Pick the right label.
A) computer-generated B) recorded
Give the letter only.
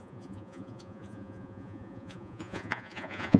A